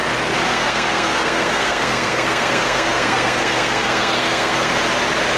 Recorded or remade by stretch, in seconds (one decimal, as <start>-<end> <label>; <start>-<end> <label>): 0.0-0.5 recorded; 0.5-4.7 remade; 4.7-5.4 recorded